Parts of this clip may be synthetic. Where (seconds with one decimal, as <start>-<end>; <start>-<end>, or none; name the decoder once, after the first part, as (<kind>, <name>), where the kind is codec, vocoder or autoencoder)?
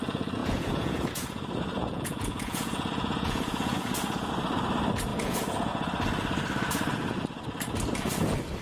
0.4-4.3 (vocoder, Vocos); 5.1-5.7